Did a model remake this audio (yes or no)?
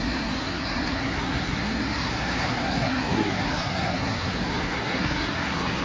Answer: yes